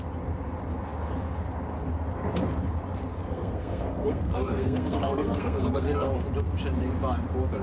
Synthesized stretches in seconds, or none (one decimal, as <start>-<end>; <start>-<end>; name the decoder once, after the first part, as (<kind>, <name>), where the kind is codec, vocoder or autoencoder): 3.1-6.1 (codec, SNAC)